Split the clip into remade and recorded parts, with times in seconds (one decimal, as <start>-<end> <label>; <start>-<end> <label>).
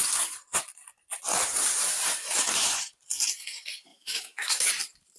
0.0-3.9 recorded; 3.9-4.7 remade; 4.7-5.2 recorded